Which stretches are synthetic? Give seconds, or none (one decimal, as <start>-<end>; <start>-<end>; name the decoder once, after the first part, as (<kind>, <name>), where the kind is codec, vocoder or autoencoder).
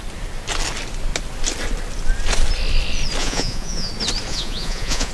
3.2-3.9 (vocoder, Vocos); 4.3-5.1